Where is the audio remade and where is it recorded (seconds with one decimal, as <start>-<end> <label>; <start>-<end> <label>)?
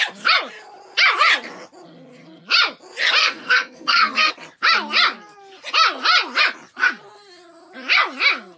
0.0-3.2 recorded; 3.2-4.3 remade; 4.3-8.6 recorded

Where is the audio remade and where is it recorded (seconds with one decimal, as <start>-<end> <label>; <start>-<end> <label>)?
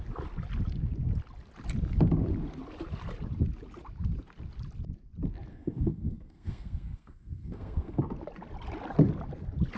0.0-5.5 recorded; 5.5-8.0 remade; 8.0-9.8 recorded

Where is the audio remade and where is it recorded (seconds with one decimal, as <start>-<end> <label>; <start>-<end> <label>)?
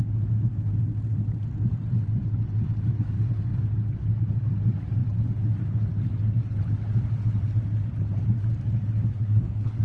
0.0-9.1 recorded; 9.1-9.8 remade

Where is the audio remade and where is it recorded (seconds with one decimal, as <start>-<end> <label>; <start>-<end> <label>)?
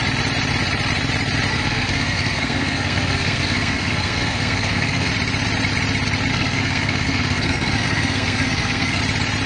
0.0-1.5 recorded; 1.5-5.1 remade; 5.1-6.3 recorded; 6.3-9.0 remade; 9.0-9.5 recorded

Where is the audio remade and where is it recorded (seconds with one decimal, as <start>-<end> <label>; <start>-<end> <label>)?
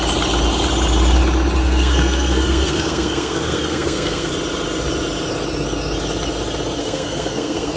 0.0-1.6 recorded; 1.6-4.3 remade; 4.3-6.8 recorded; 6.8-7.8 remade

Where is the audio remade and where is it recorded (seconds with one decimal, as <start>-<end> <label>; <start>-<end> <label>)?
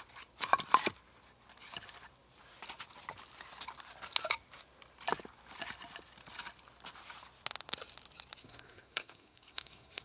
0.0-8.4 recorded; 8.4-10.0 remade